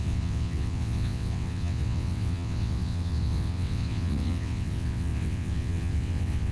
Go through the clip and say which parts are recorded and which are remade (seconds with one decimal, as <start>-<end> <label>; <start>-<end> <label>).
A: 0.0-6.5 remade